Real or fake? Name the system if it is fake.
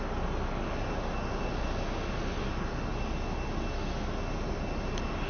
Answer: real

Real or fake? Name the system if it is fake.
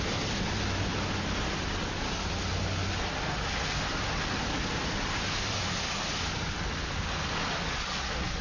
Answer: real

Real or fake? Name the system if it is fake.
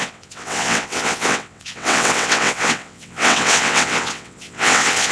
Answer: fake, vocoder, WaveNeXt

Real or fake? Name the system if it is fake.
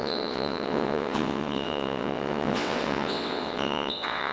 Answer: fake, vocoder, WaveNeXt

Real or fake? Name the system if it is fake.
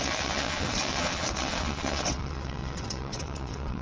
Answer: fake, vocoder, WaveNeXt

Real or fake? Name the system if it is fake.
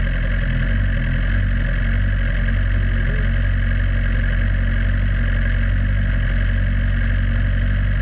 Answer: real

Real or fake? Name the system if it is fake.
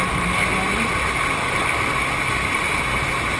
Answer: real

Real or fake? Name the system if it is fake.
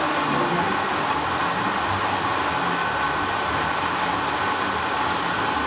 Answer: real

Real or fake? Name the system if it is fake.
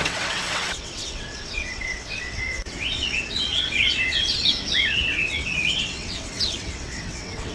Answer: fake, vocoder, WaveNeXt